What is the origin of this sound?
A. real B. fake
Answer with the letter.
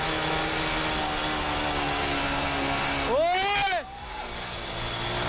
A